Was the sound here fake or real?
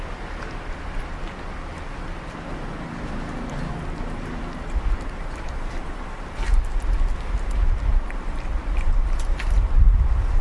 real